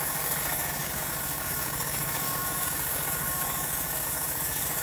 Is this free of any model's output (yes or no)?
no